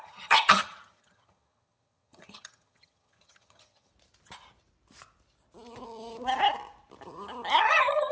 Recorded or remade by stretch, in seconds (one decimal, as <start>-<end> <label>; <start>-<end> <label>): 0.0-3.9 remade; 3.9-7.6 recorded; 7.6-8.1 remade